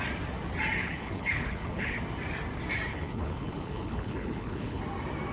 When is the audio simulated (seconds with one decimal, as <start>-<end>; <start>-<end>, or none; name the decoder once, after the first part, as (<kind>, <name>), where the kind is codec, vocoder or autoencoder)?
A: 0.8-2.0 (codec, HILCodec); 2.9-4.8